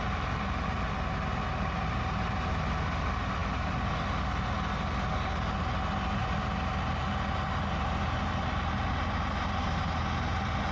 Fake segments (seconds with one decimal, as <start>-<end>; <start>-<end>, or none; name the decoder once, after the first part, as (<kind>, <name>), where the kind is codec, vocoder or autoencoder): none